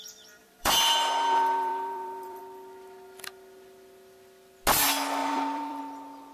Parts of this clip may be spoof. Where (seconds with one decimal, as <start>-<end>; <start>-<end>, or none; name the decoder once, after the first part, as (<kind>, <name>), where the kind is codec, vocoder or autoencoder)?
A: 0.4-2.4 (vocoder, BigVGAN v2); 5.2-5.8